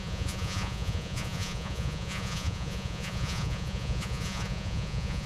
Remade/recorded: remade